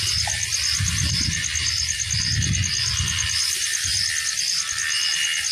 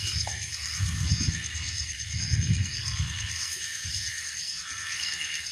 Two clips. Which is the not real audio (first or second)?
second